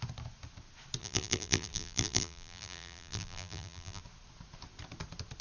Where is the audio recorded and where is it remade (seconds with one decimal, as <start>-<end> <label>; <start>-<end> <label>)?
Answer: 0.0-1.0 recorded; 1.0-4.0 remade; 4.0-5.4 recorded